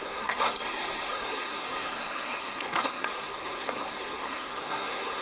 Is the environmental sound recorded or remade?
remade